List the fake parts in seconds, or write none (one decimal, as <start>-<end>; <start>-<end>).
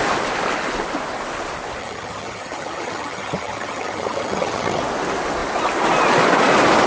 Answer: 1.8-4.8